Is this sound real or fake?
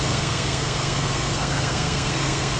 fake